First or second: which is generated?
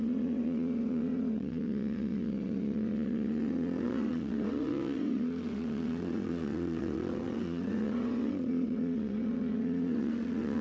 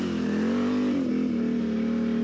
first